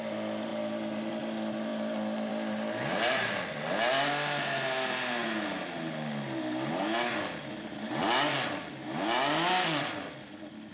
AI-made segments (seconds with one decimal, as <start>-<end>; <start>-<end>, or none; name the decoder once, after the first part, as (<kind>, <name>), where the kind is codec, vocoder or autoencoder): none